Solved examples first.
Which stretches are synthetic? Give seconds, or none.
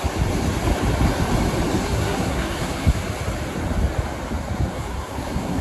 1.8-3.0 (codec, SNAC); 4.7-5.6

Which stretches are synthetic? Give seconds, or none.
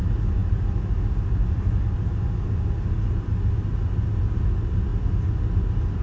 none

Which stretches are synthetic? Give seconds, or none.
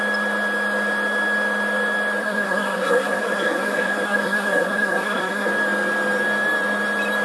2.2-5.5 (codec, SNAC)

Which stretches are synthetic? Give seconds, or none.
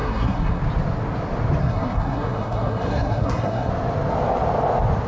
0.0-0.6 (codec, SNAC); 1.6-3.7